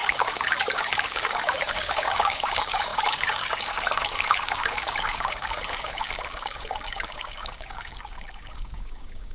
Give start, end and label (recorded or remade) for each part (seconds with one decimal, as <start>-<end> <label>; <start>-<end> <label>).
0.0-9.3 remade

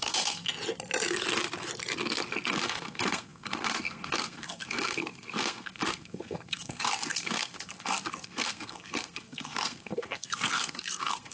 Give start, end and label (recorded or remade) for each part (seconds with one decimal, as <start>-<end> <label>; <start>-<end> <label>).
0.0-0.4 remade; 0.4-2.5 recorded; 2.5-11.3 remade

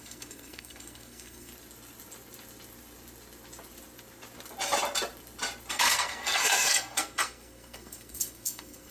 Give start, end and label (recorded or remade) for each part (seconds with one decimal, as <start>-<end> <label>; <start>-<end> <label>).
0.0-1.5 remade; 1.5-5.7 recorded; 5.7-8.9 remade

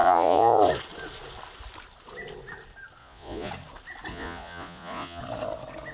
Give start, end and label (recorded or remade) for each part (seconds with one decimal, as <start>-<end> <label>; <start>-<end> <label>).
0.0-0.6 remade; 0.6-3.0 recorded; 3.0-3.5 remade; 3.5-4.1 recorded; 4.1-5.2 remade; 5.2-5.9 recorded

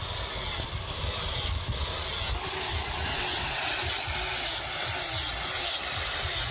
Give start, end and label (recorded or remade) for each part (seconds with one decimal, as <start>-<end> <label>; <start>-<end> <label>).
0.0-3.1 recorded; 3.1-3.9 remade; 3.9-6.5 recorded

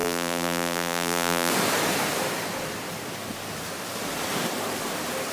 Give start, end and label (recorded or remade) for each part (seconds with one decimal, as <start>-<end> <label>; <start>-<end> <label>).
0.0-1.5 remade; 1.5-5.3 recorded

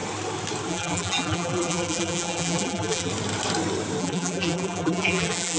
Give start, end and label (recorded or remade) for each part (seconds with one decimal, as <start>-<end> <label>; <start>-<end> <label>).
0.0-0.7 recorded; 0.7-3.1 remade; 3.1-4.0 recorded; 4.0-5.6 remade

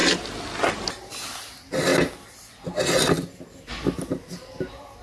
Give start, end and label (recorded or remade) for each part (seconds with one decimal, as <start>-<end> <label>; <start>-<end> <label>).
0.0-5.0 recorded